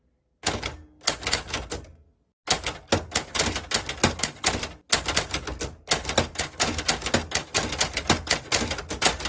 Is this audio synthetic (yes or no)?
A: no